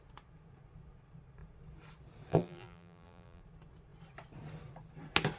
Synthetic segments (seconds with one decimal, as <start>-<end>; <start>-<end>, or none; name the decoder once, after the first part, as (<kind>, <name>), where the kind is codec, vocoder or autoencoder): 2.3-3.4 (vocoder, BigVGAN v2)